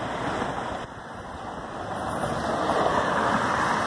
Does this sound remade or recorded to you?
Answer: recorded